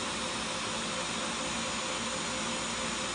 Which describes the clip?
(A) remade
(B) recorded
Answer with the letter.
B